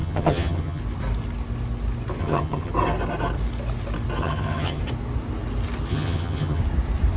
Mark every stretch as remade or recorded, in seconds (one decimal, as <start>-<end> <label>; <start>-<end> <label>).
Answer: 0.0-0.8 remade; 0.8-2.2 recorded; 2.2-2.7 remade; 2.7-4.2 recorded; 4.2-4.8 remade; 4.8-5.9 recorded; 5.9-6.6 remade; 6.6-7.2 recorded